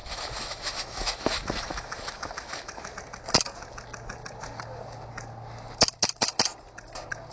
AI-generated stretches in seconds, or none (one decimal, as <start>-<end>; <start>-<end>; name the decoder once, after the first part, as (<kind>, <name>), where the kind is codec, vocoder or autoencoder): 0.0-2.9 (autoencoder, DAC-VAE)